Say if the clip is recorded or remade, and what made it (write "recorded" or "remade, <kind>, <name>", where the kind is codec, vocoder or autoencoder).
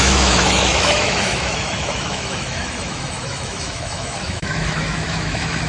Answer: remade, autoencoder, DAC-VAE